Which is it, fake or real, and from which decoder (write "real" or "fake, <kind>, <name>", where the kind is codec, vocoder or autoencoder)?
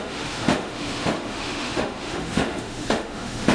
fake, autoencoder, DAC-VAE